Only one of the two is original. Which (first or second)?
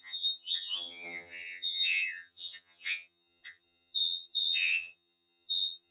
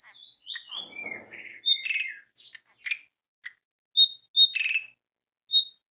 second